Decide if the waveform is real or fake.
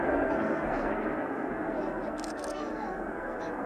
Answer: fake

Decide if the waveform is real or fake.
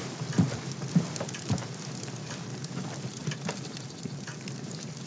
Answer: real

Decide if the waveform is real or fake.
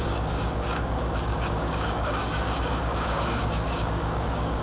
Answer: fake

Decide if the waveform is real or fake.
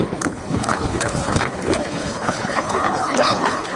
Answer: fake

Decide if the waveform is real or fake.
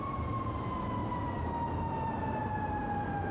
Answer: real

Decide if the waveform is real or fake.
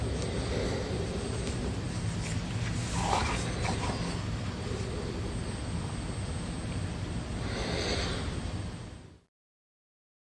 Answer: real